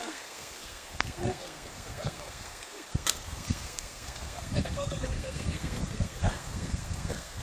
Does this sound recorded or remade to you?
remade